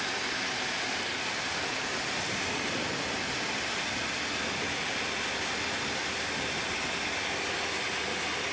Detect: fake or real real